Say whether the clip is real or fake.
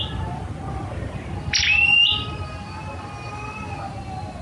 real